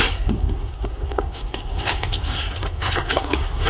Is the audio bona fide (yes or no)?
no